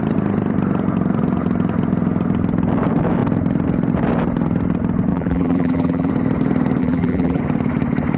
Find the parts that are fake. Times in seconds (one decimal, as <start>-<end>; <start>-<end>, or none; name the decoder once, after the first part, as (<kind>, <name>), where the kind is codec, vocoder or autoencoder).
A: 5.1-6.1 (vocoder, BigVGAN v2); 6.8-7.4